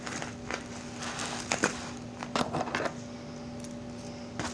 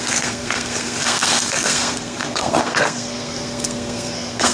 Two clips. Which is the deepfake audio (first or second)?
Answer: second